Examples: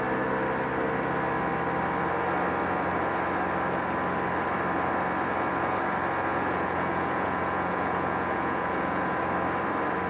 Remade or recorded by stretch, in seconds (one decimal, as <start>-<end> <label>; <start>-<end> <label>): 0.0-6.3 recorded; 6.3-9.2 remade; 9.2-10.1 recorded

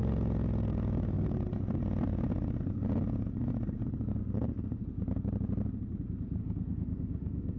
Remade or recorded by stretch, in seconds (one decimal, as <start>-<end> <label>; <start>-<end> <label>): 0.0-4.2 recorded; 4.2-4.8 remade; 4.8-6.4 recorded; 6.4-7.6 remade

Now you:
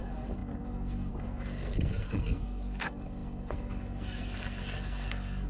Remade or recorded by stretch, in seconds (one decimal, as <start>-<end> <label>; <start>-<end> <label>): 0.0-5.5 remade

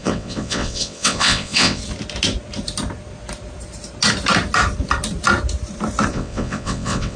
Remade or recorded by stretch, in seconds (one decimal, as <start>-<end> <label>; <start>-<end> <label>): 0.0-1.8 remade; 1.8-6.1 recorded; 6.1-7.2 remade

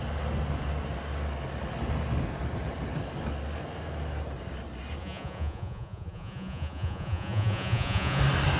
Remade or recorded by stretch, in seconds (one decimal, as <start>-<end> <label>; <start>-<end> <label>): 0.0-5.0 recorded; 5.0-8.2 remade; 8.2-8.6 recorded